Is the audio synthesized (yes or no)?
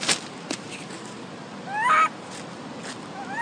no